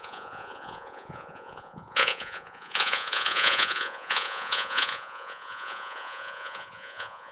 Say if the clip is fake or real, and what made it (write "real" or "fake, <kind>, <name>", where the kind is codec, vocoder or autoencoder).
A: fake, vocoder, Vocos